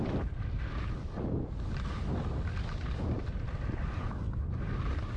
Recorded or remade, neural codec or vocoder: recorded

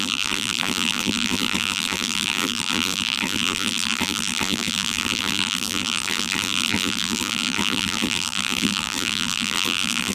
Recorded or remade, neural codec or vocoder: remade, vocoder, BigVGAN v2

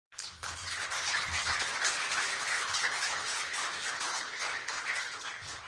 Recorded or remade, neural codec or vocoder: remade, codec, HILCodec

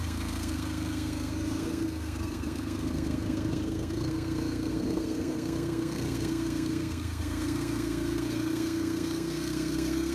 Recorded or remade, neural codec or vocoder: remade, codec, SNAC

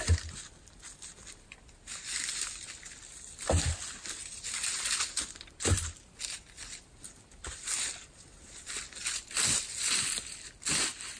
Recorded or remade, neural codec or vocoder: recorded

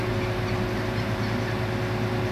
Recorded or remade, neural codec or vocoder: recorded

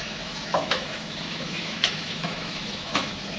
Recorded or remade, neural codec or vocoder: remade, autoencoder, DAC-VAE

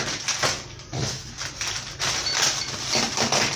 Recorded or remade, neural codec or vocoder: recorded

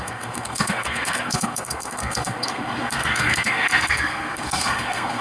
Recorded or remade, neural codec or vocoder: remade, codec, SNAC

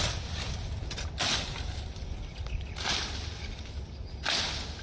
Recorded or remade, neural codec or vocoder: recorded